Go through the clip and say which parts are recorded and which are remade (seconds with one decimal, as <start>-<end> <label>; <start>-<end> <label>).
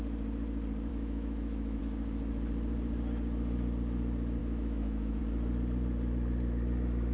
0.0-0.9 recorded; 0.9-1.8 remade; 1.8-4.4 recorded; 4.4-5.2 remade; 5.2-7.1 recorded